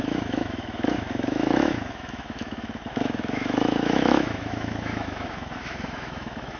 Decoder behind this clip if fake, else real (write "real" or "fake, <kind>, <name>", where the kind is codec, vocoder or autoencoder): fake, autoencoder, DAC-VAE